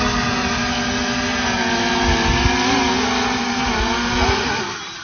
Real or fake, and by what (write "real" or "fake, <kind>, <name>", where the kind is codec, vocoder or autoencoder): real